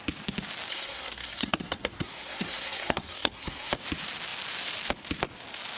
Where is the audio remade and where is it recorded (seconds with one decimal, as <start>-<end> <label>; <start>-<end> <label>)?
0.0-0.7 recorded; 0.7-3.7 remade; 3.7-5.8 recorded